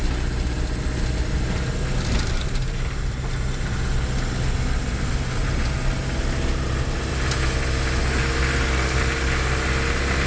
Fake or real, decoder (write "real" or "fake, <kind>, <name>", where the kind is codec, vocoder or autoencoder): real